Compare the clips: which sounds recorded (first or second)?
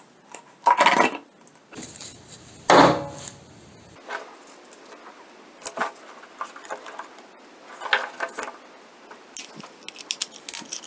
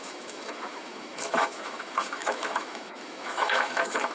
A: first